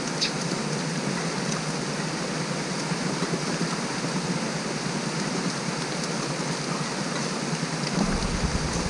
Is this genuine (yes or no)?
yes